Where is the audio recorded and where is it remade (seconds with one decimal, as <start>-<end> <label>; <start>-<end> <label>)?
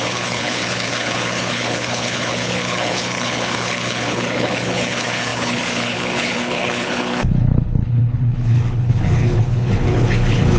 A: 0.0-10.6 remade